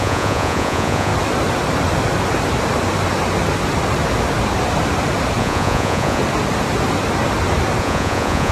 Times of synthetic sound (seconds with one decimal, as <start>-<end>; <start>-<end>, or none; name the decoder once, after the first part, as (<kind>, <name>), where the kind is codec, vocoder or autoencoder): 0.0-1.1 (vocoder, Vocos); 5.4-6.2; 7.8-8.5